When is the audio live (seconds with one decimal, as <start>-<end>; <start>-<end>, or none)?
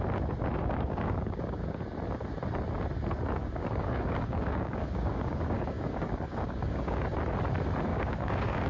0.0-0.6; 1.8-3.4; 7.1-7.9